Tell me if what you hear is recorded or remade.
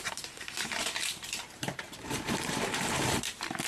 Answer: remade